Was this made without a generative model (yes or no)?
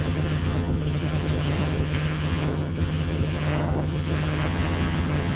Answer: no